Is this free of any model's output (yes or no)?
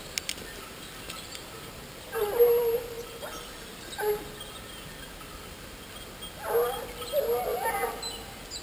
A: yes